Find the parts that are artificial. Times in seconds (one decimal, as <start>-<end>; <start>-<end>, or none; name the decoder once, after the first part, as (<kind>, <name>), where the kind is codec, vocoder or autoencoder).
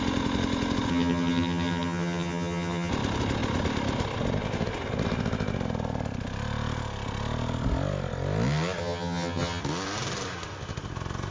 0.9-2.9 (vocoder, HiFi-GAN); 8.8-9.6